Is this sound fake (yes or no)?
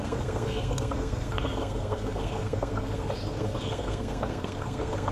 yes